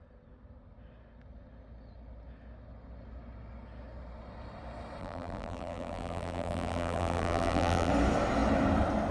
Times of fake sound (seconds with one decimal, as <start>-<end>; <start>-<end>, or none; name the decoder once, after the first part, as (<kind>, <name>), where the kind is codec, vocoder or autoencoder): 5.0-7.9 (vocoder, BigVGAN v2)